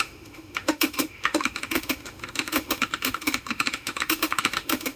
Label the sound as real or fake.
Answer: fake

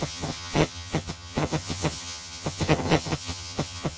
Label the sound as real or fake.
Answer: fake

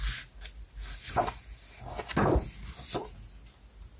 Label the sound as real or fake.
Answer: real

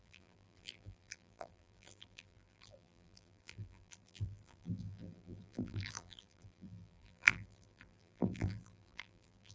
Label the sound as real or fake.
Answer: fake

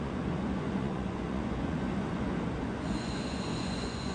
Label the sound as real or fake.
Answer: fake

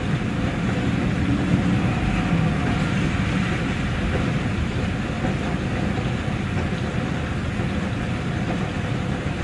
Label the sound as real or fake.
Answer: real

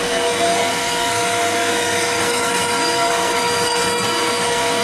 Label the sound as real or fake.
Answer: fake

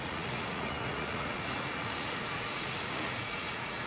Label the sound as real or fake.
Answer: fake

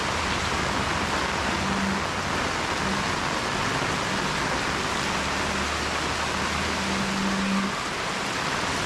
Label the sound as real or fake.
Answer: real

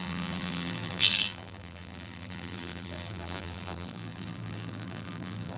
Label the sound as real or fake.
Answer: fake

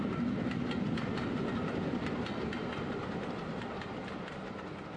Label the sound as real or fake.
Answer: real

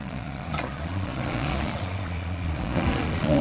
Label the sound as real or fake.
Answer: fake